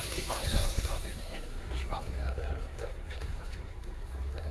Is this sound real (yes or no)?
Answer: no